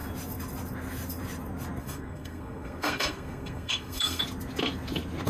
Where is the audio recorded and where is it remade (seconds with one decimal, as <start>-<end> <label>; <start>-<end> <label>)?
0.0-1.8 recorded; 1.8-4.2 remade; 4.2-5.3 recorded